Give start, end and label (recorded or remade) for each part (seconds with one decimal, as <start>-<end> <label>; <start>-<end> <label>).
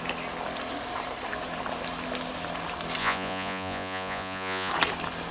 0.0-3.0 recorded; 3.0-4.7 remade; 4.7-5.3 recorded